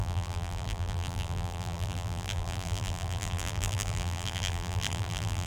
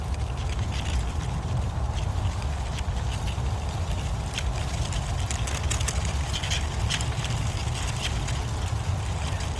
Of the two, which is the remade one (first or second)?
first